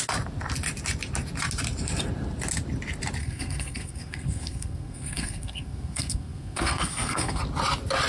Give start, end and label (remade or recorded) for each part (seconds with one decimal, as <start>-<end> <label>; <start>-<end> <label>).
0.0-3.2 recorded; 3.2-7.4 remade; 7.4-8.1 recorded